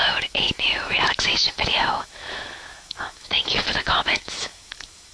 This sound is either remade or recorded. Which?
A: remade